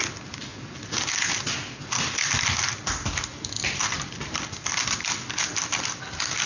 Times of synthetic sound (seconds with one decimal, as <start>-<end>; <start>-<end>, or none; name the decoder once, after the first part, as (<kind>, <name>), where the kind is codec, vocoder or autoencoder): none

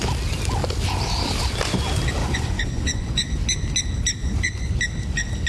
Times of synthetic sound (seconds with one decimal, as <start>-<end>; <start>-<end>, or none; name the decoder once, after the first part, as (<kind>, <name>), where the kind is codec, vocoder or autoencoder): 2.2-3.3 (vocoder, Vocos); 4.2-4.7

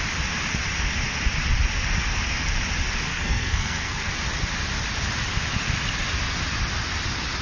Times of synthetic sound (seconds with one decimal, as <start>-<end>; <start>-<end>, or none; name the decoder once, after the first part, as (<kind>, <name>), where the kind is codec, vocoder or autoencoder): 3.1-4.1 (codec, SNAC)

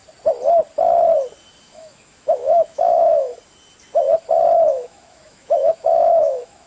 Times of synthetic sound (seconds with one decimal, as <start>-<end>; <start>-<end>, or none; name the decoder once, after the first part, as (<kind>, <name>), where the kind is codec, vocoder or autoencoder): 1.6-3.3 (autoencoder, DAC-VAE); 4.7-6.7

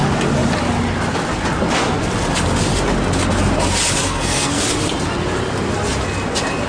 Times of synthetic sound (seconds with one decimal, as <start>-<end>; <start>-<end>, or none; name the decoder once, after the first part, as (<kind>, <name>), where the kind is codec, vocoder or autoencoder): 4.0-4.6 (codec, SNAC)